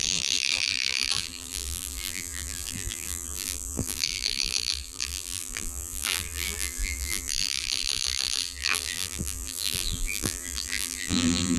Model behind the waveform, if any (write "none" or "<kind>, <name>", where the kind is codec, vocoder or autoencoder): vocoder, BigVGAN v2